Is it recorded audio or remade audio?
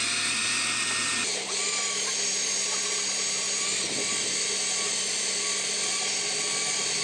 recorded